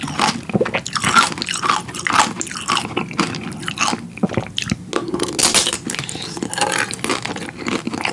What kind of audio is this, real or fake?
real